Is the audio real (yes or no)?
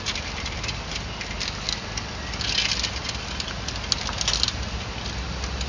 yes